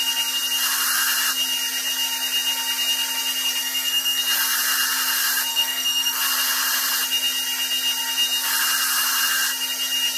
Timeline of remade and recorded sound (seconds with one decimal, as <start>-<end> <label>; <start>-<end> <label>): 0.0-3.6 recorded; 3.6-4.2 remade; 4.2-5.5 recorded; 5.5-6.2 remade; 6.2-10.2 recorded